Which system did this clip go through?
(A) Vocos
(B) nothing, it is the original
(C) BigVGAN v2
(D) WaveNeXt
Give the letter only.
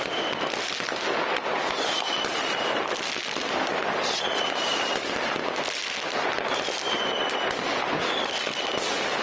B